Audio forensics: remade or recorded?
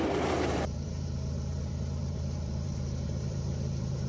remade